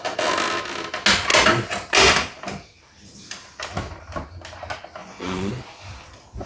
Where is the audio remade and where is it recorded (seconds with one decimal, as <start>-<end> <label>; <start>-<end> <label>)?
0.0-5.0 recorded; 5.0-5.5 remade; 5.5-6.5 recorded